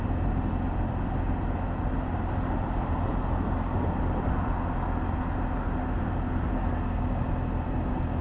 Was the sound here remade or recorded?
recorded